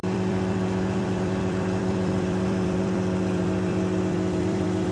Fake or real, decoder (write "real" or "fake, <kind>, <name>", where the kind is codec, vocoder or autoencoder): fake, vocoder, BigVGAN v2